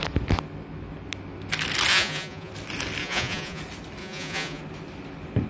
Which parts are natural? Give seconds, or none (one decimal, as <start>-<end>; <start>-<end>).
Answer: 0.0-1.9; 2.5-3.0; 3.6-4.0; 4.6-5.5